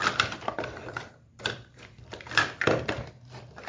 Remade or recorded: remade